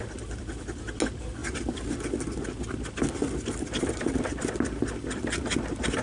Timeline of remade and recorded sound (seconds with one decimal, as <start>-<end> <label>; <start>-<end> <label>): 0.0-6.0 recorded